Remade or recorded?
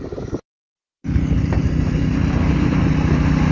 recorded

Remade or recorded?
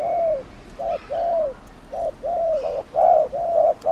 remade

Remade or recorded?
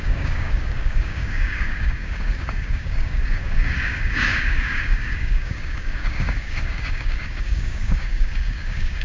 remade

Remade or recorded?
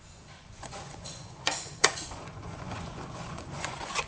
remade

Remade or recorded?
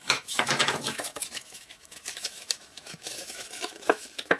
remade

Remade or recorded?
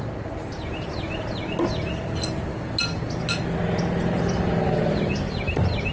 recorded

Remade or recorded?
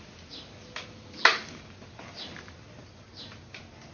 recorded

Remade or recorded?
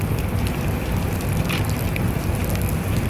recorded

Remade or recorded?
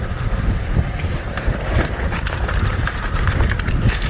remade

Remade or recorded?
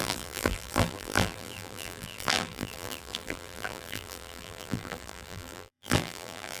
remade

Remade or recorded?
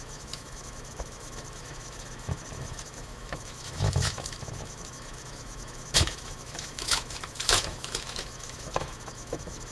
remade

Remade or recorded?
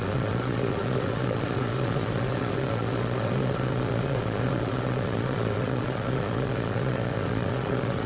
remade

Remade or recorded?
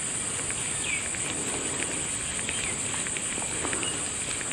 remade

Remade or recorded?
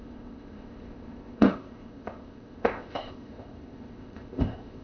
remade